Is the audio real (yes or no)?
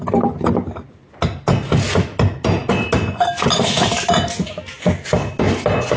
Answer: yes